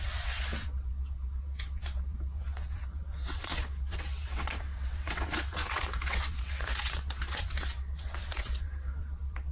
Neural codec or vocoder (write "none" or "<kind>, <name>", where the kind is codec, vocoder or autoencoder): vocoder, WaveNeXt